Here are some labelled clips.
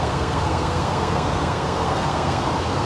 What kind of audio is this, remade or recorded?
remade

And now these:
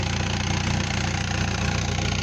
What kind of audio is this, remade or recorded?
recorded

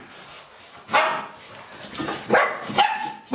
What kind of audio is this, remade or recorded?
recorded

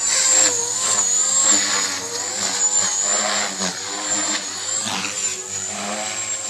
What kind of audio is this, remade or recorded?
recorded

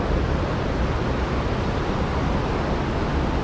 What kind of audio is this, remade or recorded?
recorded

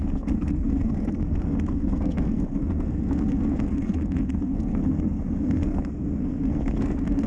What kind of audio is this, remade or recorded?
remade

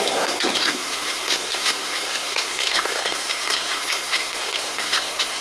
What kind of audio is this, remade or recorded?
remade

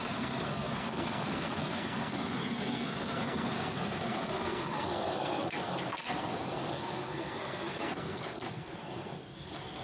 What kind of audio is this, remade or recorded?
remade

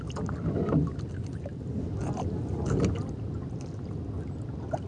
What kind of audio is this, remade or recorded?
recorded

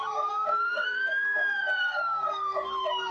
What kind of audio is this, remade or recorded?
remade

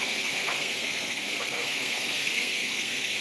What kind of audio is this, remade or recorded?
remade